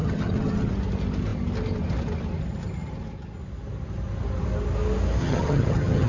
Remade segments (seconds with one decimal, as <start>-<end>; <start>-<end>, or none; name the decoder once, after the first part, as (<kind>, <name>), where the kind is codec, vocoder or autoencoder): 0.0-0.7 (vocoder, HiFi-GAN); 5.2-6.1